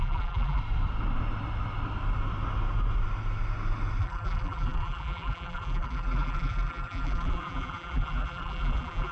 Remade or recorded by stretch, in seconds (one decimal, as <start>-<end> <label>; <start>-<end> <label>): 0.0-0.6 remade; 0.6-4.0 recorded; 4.0-9.1 remade